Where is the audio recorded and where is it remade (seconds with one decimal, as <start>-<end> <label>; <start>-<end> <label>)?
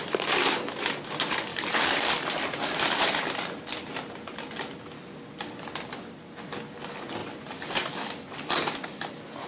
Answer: 0.0-1.5 recorded; 1.5-2.1 remade; 2.1-7.2 recorded; 7.2-7.9 remade; 7.9-9.5 recorded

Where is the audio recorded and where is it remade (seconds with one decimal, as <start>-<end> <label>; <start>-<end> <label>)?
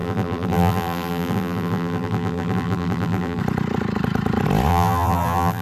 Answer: 0.0-3.4 remade; 3.4-4.7 recorded; 4.7-5.6 remade